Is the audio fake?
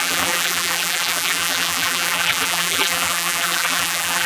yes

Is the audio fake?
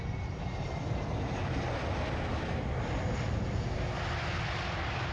no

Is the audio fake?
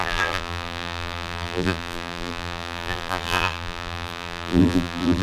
yes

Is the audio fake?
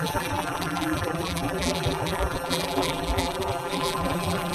yes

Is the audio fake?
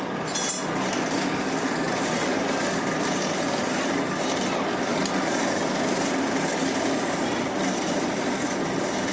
no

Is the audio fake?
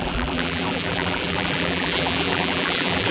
yes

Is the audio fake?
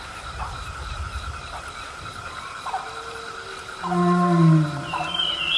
no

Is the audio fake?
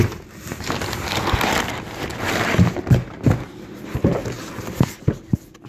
no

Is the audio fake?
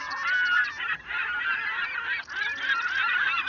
yes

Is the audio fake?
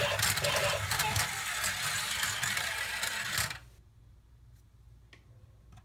no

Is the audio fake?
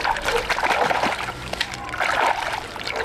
no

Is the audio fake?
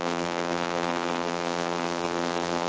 yes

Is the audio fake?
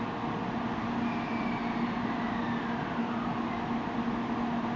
no